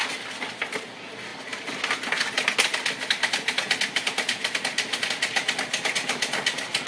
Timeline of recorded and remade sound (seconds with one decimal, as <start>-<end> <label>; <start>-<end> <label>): 0.0-6.9 recorded